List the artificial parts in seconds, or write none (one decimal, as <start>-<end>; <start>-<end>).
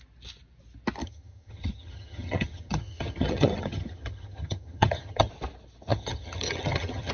1.0-5.3; 5.9-7.1